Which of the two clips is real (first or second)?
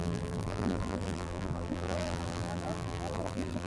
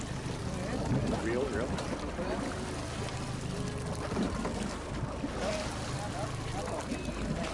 second